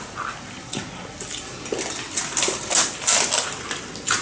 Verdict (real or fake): real